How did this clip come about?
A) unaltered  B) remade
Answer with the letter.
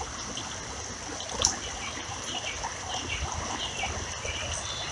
A